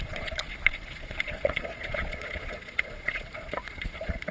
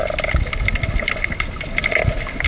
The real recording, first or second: second